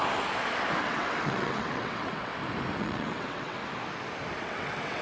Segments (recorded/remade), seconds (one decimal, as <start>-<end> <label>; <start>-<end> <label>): 0.0-0.8 recorded; 0.8-2.3 remade; 2.3-2.8 recorded; 2.8-3.6 remade; 3.6-4.4 recorded; 4.4-5.0 remade